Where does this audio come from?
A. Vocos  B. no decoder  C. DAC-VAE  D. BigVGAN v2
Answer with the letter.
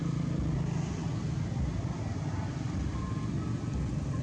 B